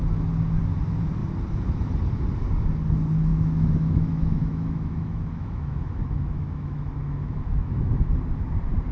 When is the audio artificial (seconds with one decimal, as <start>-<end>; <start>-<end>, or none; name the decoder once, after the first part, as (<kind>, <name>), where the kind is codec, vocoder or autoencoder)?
3.3-8.1 (autoencoder, DAC-VAE)